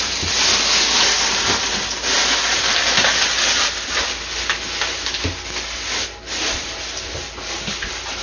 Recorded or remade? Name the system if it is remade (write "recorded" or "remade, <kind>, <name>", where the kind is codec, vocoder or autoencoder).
recorded